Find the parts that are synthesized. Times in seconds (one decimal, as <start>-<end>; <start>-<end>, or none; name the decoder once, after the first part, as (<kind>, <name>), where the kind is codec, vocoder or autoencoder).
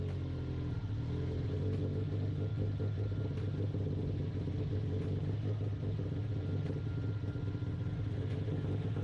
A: none